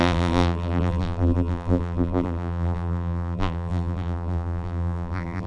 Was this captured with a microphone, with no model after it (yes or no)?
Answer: no